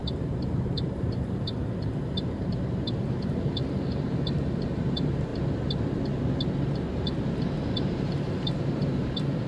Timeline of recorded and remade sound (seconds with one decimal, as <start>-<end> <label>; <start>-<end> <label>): 0.0-5.3 remade; 5.3-7.0 recorded; 7.0-9.5 remade